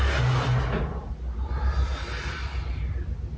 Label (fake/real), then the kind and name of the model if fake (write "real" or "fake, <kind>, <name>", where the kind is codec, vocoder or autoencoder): real